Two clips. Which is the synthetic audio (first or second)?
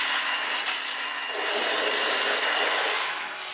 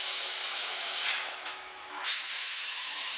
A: second